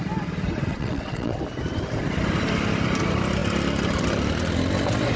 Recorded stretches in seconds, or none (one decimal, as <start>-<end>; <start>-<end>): 0.0-0.7; 1.4-5.2